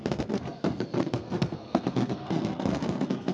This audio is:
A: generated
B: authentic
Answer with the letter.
A